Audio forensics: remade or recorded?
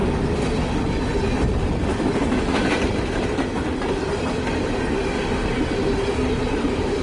recorded